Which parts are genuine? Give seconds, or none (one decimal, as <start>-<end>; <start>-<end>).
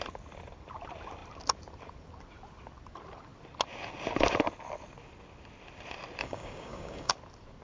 0.0-6.2; 7.1-7.6